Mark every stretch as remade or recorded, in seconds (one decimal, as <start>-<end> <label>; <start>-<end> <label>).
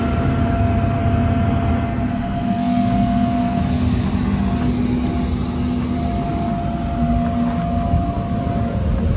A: 0.0-1.9 recorded; 1.9-3.6 remade; 3.6-9.2 recorded